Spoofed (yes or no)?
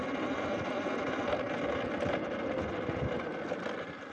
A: no